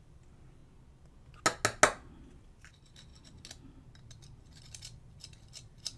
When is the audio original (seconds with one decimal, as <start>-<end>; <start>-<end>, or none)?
0.6-2.2; 3.1-4.4